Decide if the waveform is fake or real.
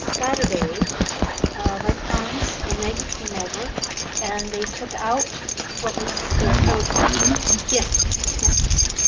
real